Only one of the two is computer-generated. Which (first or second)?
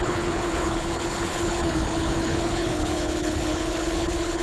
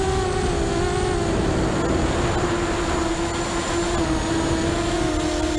first